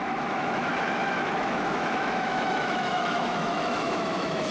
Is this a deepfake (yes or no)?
yes